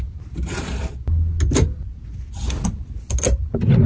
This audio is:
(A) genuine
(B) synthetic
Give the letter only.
A